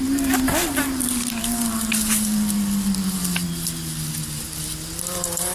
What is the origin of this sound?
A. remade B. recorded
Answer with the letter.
A